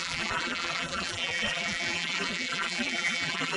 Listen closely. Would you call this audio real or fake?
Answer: fake